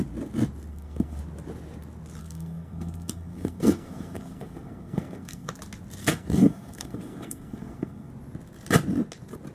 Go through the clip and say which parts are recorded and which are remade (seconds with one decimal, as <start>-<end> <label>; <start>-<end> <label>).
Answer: 0.0-0.7 recorded; 0.7-1.2 remade; 1.2-2.2 recorded; 2.2-5.5 remade; 5.5-6.0 recorded; 6.0-8.1 remade; 8.1-9.5 recorded